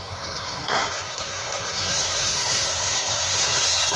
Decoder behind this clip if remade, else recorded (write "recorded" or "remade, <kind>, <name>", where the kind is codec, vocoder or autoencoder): remade, codec, SNAC